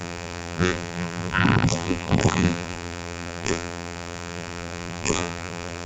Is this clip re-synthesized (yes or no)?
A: yes